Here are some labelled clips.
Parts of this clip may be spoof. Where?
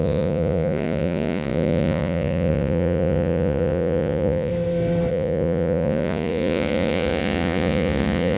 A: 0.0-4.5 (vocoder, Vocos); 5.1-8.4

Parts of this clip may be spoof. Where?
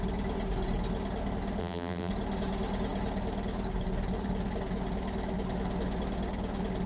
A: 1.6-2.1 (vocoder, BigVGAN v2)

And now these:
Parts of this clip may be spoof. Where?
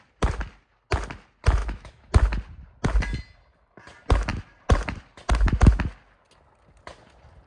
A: 1.6-2.1 (autoencoder, DAC-VAE)